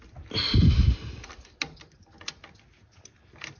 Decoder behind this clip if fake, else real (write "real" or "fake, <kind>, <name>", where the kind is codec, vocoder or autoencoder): real